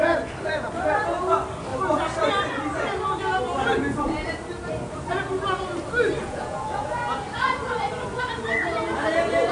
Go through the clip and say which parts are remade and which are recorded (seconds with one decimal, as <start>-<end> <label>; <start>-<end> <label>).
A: 0.0-6.2 recorded; 6.2-7.0 remade; 7.0-9.5 recorded